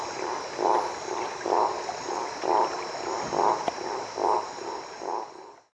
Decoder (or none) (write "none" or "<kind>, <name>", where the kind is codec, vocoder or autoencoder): none